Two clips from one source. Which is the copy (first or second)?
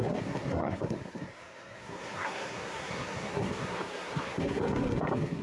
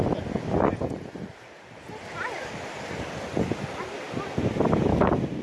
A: first